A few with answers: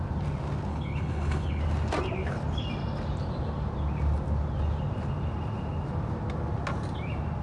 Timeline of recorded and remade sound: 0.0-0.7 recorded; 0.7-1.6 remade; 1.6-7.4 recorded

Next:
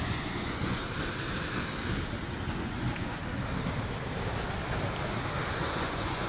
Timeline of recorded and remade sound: 0.0-0.8 remade; 0.8-2.5 recorded; 2.5-3.2 remade; 3.2-5.5 recorded; 5.5-6.3 remade

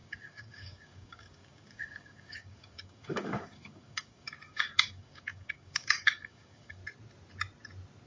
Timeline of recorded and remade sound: 0.0-6.8 remade; 6.8-8.1 recorded

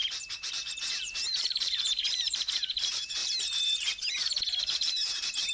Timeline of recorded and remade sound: 0.0-5.5 remade

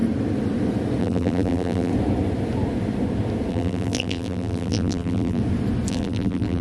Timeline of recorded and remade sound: 0.0-1.0 recorded; 1.0-1.9 remade; 1.9-3.5 recorded; 3.5-5.4 remade; 5.4-5.9 recorded; 5.9-6.6 remade

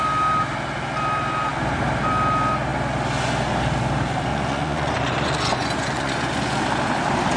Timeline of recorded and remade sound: 0.0-4.3 recorded; 4.3-6.6 remade; 6.6-7.4 recorded

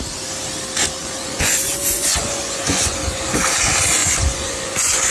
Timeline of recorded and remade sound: 0.0-1.0 recorded; 1.0-3.4 remade; 3.4-4.0 recorded; 4.0-5.1 remade

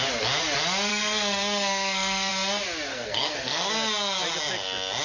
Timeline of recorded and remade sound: 0.0-0.9 recorded; 0.9-2.3 remade; 2.3-2.9 recorded; 2.9-3.7 remade; 3.7-5.0 recorded